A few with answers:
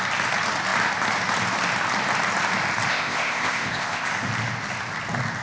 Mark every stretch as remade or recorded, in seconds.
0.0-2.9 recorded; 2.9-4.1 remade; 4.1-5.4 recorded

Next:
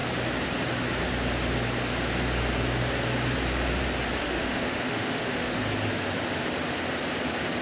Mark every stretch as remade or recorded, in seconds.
0.0-4.2 recorded; 4.2-5.5 remade; 5.5-7.6 recorded

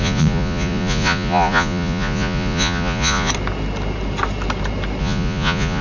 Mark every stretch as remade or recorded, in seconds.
0.0-3.3 remade; 3.3-5.0 recorded; 5.0-5.8 remade